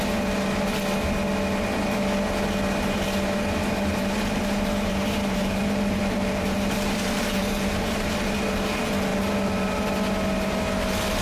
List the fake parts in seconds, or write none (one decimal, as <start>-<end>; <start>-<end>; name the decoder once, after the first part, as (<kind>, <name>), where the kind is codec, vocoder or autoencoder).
3.6-8.1 (vocoder, BigVGAN v2); 9.1-9.9